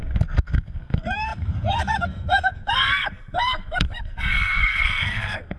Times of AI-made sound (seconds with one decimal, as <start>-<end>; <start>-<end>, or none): 0.0-5.6

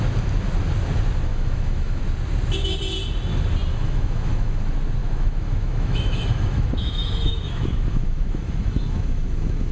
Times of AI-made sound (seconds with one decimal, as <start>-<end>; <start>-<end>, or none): 1.3-2.0; 3.7-4.6; 5.0-9.7

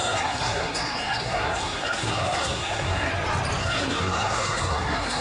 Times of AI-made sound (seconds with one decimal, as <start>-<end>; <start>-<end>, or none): 0.0-3.1; 3.6-5.2

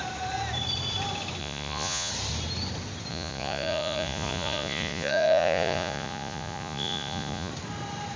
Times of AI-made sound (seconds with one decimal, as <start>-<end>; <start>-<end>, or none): 1.4-2.1; 3.1-7.5

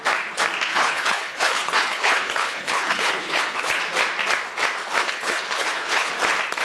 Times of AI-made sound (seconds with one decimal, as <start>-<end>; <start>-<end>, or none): 0.7-3.8; 5.0-6.1

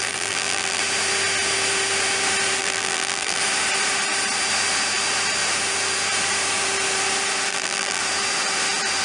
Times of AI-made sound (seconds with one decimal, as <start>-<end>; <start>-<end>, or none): 0.0-0.8; 2.6-3.4; 7.5-8.0

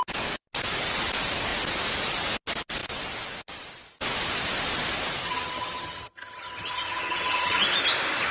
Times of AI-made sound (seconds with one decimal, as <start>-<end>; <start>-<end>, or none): 5.2-7.6

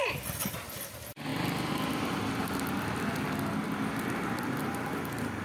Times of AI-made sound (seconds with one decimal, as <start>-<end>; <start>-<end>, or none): none